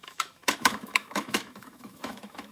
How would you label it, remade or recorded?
remade